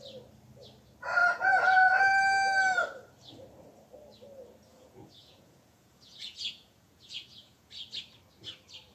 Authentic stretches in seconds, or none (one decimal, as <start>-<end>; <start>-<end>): 0.0-1.2; 2.0-4.7; 7.7-8.9